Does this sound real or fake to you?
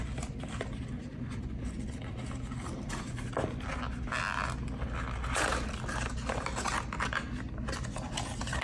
real